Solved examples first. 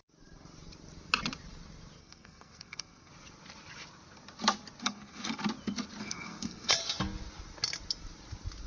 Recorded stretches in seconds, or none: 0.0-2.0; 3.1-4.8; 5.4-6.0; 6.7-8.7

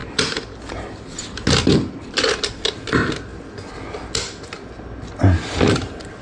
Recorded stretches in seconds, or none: 0.0-6.2

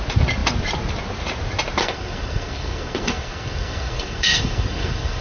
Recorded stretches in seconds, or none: 0.0-1.8

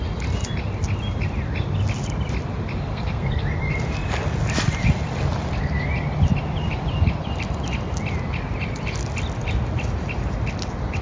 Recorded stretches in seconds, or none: 0.0-2.9; 3.4-11.0